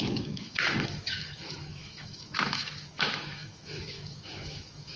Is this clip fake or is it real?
fake